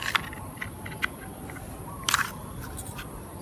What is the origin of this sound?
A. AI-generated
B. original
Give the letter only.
B